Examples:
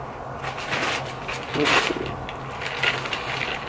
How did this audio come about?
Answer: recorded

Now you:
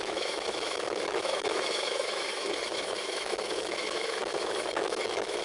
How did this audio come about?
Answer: remade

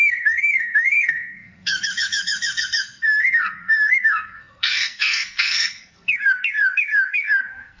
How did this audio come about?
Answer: remade